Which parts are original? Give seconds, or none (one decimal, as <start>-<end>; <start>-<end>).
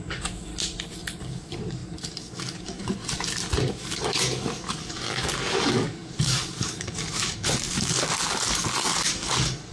0.5-1.2; 3.0-3.7